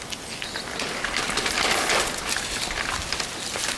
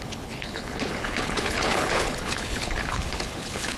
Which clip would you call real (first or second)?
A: first